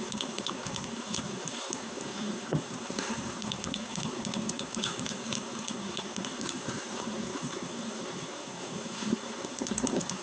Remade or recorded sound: remade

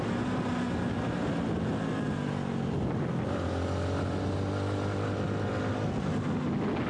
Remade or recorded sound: recorded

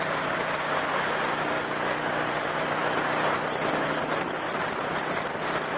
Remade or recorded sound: recorded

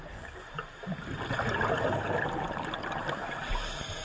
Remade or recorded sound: recorded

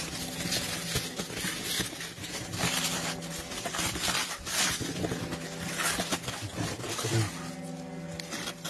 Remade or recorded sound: recorded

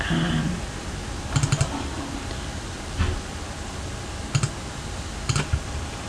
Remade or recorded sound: recorded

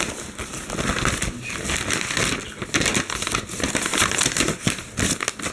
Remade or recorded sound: recorded